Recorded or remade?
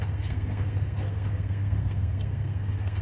remade